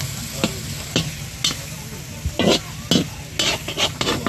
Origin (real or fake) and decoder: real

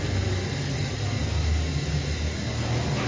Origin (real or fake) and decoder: real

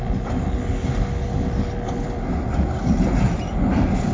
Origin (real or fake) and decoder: real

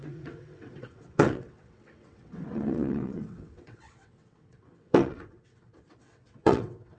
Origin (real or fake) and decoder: fake, vocoder, WaveNeXt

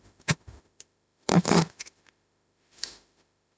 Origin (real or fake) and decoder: fake, autoencoder, DAC-VAE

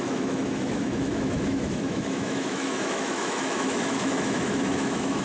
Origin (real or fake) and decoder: fake, autoencoder, DAC-VAE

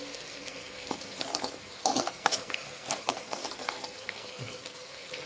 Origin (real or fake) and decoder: fake, codec, SNAC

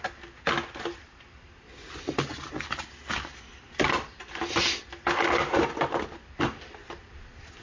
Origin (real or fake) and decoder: real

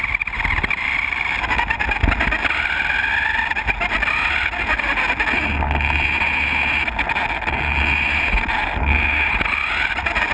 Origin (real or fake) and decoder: real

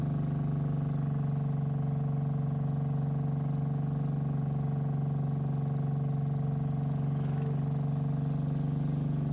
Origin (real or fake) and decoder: real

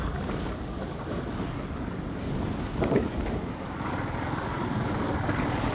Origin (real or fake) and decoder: fake, codec, DAC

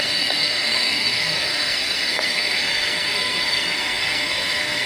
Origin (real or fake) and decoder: fake, codec, SNAC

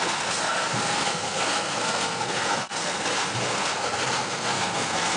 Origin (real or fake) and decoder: fake, codec, SNAC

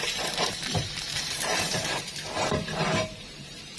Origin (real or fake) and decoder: fake, vocoder, BigVGAN v2